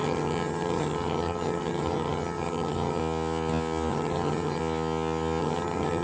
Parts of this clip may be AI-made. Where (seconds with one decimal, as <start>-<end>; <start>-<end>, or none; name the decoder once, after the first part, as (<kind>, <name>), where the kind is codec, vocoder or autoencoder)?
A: 0.0-3.0 (vocoder, HiFi-GAN); 3.9-4.6; 5.4-6.0